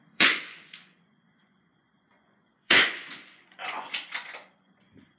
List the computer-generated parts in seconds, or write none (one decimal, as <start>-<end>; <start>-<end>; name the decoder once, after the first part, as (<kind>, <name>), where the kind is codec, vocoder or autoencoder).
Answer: 0.0-5.2 (vocoder, Vocos)